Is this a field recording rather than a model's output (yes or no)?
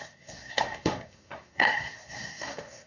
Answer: no